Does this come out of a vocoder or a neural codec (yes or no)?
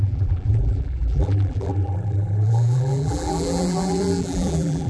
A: yes